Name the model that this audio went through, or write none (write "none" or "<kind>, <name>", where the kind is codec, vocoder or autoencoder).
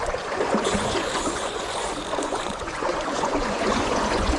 vocoder, Vocos